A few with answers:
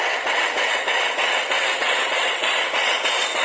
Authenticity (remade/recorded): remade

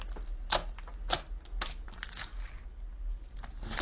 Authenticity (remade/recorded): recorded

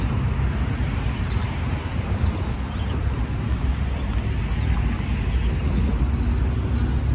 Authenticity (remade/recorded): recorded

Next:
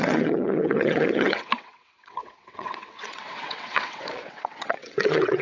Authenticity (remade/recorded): remade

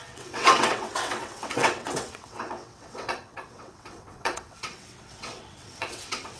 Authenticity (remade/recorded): remade